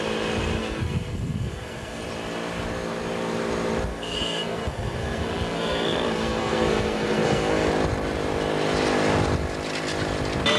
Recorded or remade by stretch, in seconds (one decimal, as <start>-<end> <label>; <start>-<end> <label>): 0.0-0.6 recorded; 0.6-2.0 remade; 2.0-3.9 recorded; 3.9-7.7 remade; 7.7-10.6 recorded